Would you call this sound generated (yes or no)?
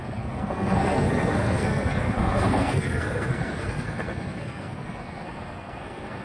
yes